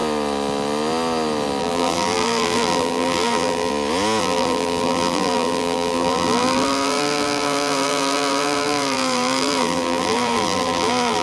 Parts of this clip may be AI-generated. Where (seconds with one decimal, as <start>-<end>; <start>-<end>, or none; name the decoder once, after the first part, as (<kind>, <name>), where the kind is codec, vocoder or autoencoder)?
1.6-3.7 (vocoder, BigVGAN v2); 4.2-11.2